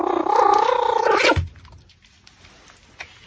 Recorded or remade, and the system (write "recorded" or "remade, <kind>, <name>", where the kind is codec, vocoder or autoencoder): recorded